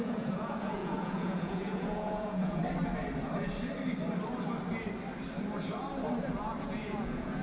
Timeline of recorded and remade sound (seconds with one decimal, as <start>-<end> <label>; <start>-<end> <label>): 0.0-2.6 remade; 2.6-6.6 recorded; 6.6-7.4 remade